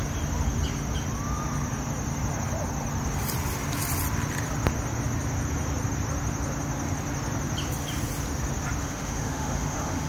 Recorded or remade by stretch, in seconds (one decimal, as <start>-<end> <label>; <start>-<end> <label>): 0.0-8.8 recorded; 8.8-10.1 remade